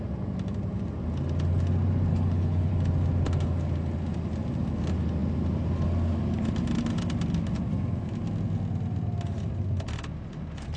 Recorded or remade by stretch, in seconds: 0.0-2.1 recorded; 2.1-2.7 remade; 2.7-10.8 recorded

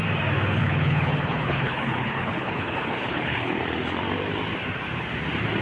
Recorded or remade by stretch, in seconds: 0.0-0.6 recorded; 0.6-3.6 remade; 3.6-5.6 recorded

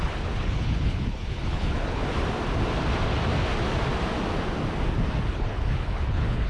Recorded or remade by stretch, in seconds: 0.0-2.0 remade; 2.0-5.2 recorded; 5.2-6.5 remade

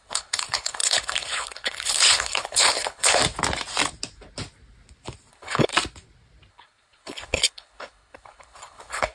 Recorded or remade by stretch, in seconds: 0.0-3.2 remade; 3.2-5.3 recorded; 5.3-5.7 remade; 5.7-6.5 recorded; 6.5-9.1 remade